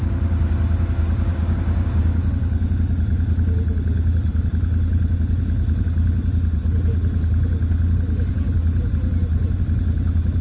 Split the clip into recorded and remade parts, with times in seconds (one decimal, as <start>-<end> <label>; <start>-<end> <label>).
0.0-1.3 recorded; 1.3-2.3 remade; 2.3-10.4 recorded